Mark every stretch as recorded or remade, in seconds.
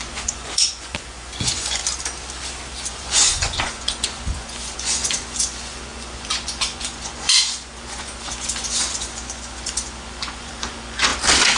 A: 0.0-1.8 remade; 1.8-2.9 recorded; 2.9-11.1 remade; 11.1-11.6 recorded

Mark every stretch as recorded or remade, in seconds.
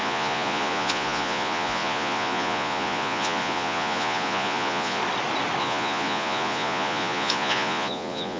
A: 0.0-5.0 remade; 5.0-5.6 recorded; 5.6-8.4 remade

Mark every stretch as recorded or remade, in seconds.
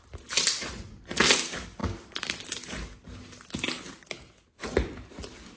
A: 0.0-5.6 recorded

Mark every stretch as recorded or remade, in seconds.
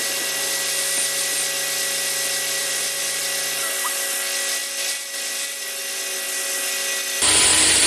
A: 0.0-2.6 recorded; 2.6-3.2 remade; 3.2-7.9 recorded